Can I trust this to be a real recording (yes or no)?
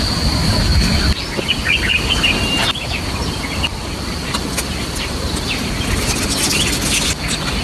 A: yes